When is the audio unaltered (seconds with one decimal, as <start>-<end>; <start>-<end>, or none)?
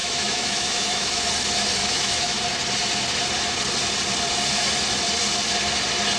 1.2-1.8; 2.4-6.2